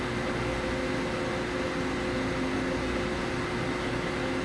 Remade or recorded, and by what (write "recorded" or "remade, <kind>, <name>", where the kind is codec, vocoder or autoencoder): recorded